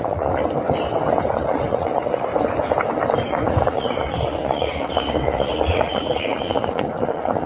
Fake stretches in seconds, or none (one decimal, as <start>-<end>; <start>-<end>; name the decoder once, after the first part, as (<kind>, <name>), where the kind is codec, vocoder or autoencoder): 0.0-0.4 (vocoder, Vocos); 1.3-2.3; 3.3-7.5